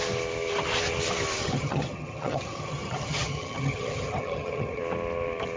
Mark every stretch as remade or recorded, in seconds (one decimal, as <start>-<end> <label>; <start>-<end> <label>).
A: 0.0-1.4 recorded; 1.4-4.8 remade; 4.8-5.6 recorded

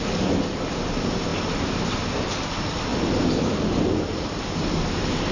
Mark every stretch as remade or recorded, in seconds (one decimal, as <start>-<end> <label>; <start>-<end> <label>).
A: 0.0-5.3 recorded

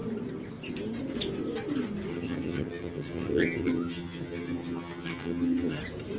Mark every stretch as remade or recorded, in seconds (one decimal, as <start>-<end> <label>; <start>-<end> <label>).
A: 0.0-2.1 recorded; 2.1-5.8 remade; 5.8-6.2 recorded

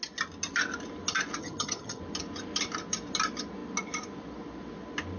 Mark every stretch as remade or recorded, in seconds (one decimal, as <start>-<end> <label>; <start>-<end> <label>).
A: 0.0-1.4 recorded; 1.4-2.0 remade; 2.0-5.2 recorded

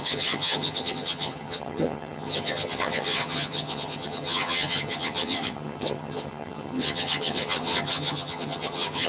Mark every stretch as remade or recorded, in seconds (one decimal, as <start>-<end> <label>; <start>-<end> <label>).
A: 0.0-9.1 remade

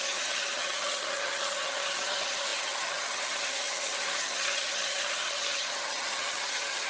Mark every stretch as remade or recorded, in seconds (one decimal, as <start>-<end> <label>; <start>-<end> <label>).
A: 0.0-6.9 remade

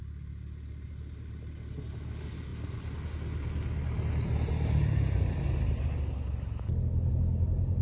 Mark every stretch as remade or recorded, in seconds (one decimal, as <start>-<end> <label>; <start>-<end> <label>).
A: 0.0-7.8 recorded

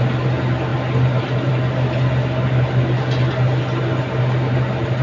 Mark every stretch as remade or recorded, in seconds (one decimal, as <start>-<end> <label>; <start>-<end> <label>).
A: 0.0-5.0 recorded